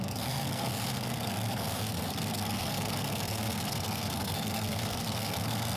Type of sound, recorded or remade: remade